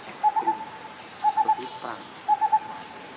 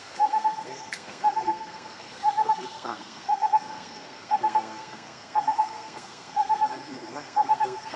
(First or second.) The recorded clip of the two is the first